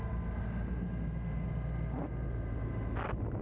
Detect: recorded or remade recorded